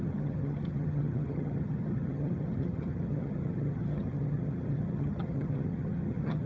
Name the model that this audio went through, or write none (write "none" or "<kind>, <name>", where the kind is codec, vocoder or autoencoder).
vocoder, HiFi-GAN